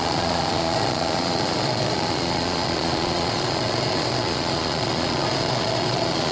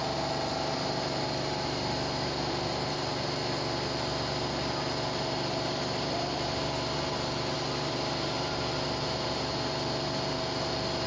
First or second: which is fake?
first